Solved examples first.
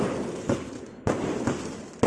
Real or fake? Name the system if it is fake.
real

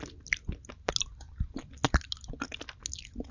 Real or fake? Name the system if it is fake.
real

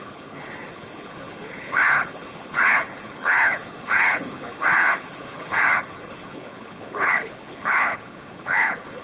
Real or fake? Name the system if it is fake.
fake, codec, HILCodec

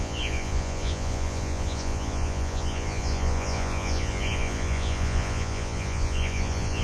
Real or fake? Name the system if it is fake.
fake, vocoder, Vocos